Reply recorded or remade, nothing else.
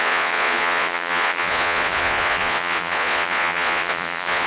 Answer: remade